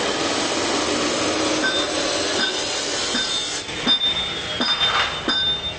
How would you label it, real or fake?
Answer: real